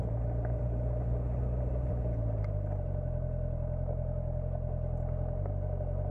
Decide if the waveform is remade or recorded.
recorded